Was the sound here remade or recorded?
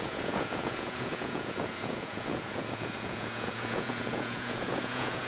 remade